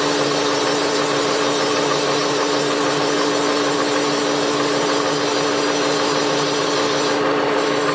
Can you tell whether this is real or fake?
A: real